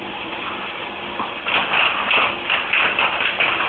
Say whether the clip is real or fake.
real